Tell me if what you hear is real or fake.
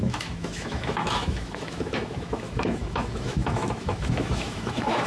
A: fake